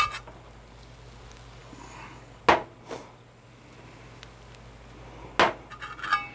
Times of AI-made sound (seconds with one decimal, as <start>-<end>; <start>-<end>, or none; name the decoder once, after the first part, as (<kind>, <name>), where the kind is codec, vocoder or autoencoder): 1.6-2.4 (codec, DAC)